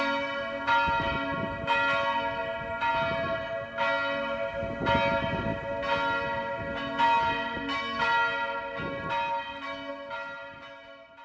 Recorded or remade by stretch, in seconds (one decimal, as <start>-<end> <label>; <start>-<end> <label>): 0.0-11.2 recorded